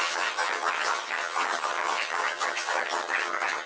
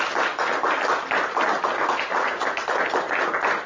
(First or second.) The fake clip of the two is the first